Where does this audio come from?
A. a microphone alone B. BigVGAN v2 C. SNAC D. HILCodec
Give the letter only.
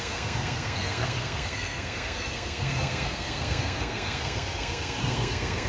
C